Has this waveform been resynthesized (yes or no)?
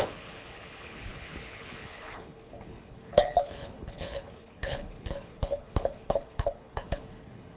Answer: yes